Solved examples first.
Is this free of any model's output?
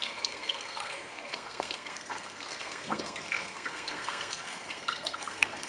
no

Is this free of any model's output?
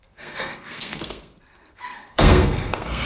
no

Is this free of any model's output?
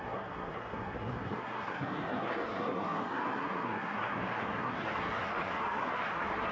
no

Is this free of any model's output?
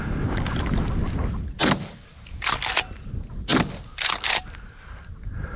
yes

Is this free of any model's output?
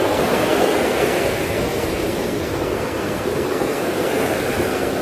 no